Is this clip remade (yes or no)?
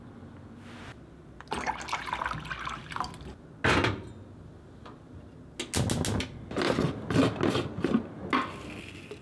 no